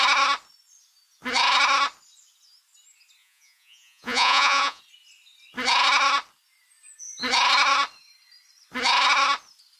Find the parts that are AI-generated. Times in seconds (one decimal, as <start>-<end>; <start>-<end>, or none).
3.2-4.8